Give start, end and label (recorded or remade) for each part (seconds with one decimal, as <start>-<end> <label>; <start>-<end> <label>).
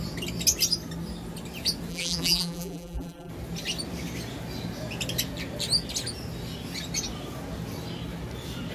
0.0-1.9 recorded; 1.9-3.3 remade; 3.3-8.7 recorded